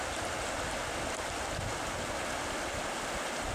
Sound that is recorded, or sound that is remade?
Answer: recorded